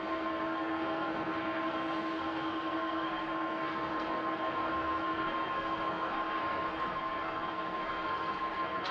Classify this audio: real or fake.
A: fake